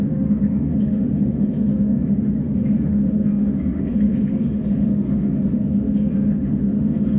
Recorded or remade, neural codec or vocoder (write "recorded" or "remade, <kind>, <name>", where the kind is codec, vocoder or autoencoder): remade, autoencoder, DAC-VAE